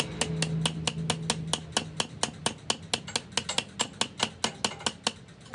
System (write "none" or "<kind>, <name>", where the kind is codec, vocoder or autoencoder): none